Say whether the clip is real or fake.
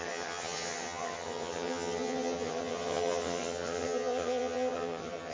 fake